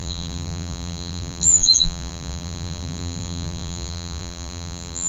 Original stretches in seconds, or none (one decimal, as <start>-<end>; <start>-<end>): none

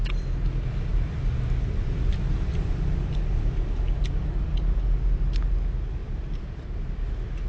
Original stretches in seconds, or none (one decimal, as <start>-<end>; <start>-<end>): 0.0-0.9; 4.5-6.0; 6.7-7.5

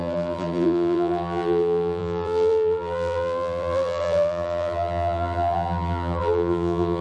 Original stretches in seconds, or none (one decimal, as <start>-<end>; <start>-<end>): none

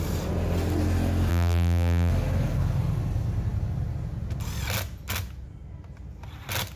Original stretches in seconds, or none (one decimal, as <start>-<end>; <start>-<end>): 0.0-1.3; 2.1-6.8

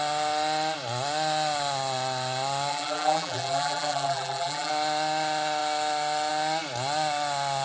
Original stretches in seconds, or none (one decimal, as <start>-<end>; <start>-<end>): 0.0-2.7; 4.7-7.6

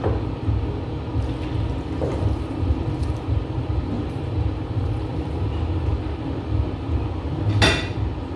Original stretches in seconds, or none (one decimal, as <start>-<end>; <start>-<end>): 0.0-2.1; 7.0-8.4

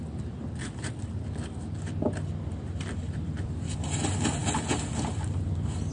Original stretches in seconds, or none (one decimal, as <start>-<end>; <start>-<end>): 0.0-2.5

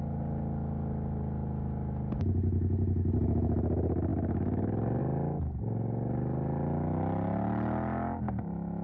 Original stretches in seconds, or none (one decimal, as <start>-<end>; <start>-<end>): 0.0-8.8